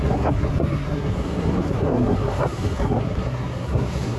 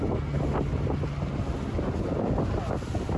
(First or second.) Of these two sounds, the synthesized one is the first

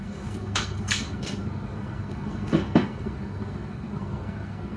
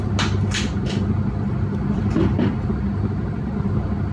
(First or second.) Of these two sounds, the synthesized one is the first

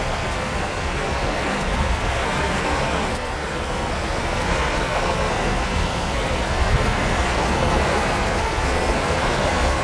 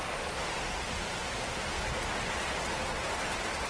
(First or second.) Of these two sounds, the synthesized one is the first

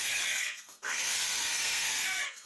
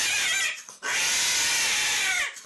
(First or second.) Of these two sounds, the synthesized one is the first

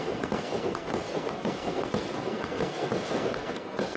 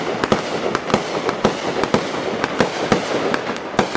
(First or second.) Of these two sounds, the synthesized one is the first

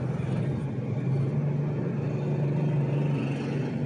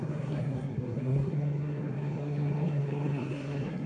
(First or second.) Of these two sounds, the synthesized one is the second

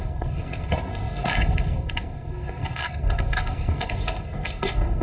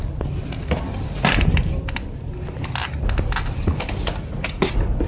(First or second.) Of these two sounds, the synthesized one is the first